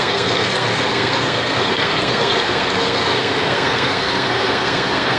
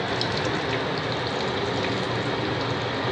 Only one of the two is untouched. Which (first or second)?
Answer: second